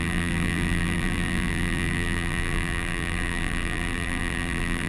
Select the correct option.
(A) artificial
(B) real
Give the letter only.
A